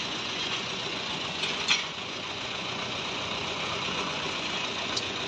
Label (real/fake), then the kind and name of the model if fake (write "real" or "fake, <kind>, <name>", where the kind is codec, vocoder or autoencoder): fake, vocoder, Vocos